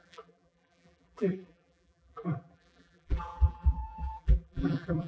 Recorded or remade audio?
remade